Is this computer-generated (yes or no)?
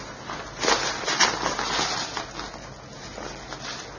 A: no